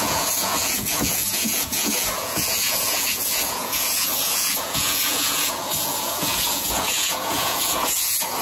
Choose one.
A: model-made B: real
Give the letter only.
A